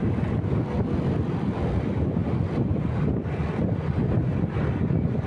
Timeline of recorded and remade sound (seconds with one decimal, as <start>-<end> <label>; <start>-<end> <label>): 0.0-5.3 recorded